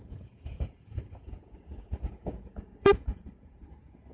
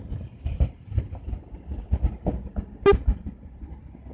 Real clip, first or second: second